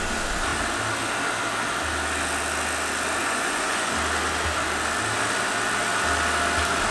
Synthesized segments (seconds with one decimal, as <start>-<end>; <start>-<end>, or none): 3.2-3.9